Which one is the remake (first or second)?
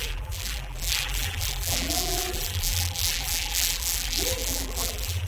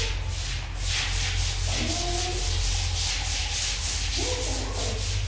first